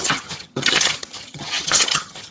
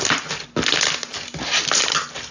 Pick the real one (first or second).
second